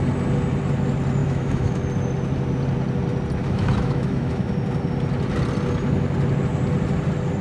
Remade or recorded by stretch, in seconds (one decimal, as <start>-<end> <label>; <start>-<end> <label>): 0.0-1.2 recorded; 1.2-1.8 remade; 1.8-3.4 recorded; 3.4-4.5 remade; 4.5-7.4 recorded